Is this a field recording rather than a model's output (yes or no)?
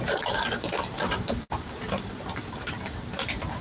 no